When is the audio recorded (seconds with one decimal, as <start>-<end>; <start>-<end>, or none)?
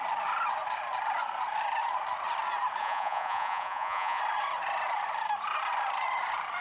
0.0-2.8; 4.2-6.6